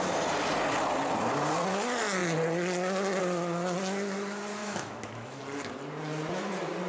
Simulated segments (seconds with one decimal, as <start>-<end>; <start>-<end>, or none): 4.6-5.4

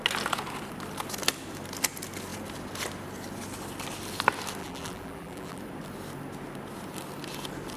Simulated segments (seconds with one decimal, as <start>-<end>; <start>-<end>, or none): 4.6-5.6